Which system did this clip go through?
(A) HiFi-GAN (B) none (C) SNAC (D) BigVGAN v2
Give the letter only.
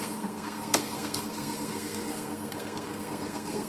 C